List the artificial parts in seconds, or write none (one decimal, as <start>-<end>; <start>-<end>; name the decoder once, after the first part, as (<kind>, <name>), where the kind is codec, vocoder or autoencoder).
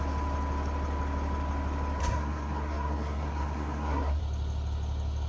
2.0-4.2 (codec, SNAC)